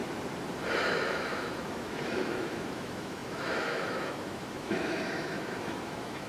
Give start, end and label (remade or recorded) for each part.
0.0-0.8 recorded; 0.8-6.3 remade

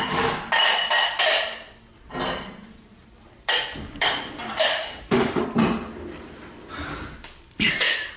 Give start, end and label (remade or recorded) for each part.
0.0-4.7 recorded; 4.7-5.4 remade; 5.4-8.2 recorded